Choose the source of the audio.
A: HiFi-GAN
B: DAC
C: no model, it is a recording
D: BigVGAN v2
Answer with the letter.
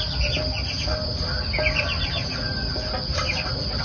C